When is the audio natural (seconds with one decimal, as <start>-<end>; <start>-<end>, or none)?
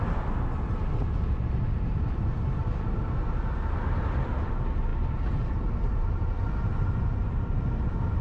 0.0-8.2